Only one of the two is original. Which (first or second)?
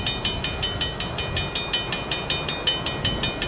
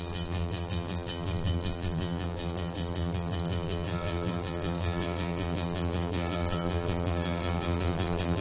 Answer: first